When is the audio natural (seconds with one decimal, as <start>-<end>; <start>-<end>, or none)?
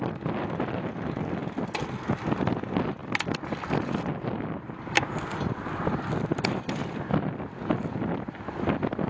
0.0-9.1